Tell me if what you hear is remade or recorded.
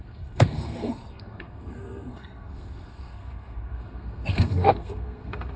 remade